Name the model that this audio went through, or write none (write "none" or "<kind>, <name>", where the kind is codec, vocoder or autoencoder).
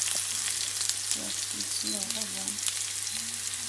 none